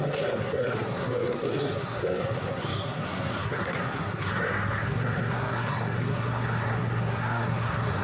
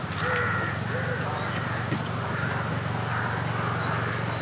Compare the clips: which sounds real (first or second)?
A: second